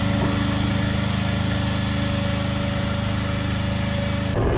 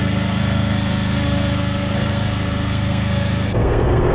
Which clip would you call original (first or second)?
first